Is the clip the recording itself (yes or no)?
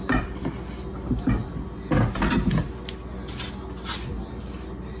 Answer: yes